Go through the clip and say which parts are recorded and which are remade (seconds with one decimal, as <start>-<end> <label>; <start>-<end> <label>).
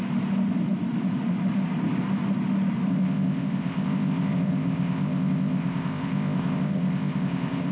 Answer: 0.0-2.9 recorded; 2.9-7.7 remade